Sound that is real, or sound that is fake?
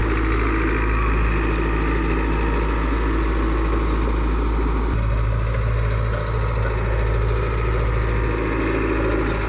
real